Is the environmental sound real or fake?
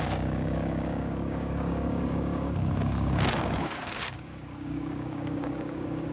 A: fake